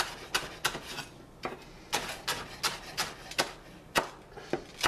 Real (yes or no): yes